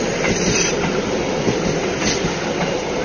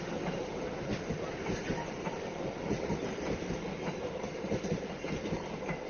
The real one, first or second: first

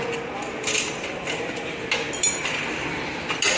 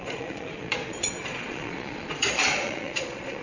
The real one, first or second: first